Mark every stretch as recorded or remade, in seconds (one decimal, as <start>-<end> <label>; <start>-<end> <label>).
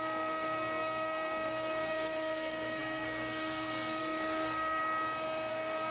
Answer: 0.0-4.8 remade; 4.8-5.5 recorded; 5.5-5.9 remade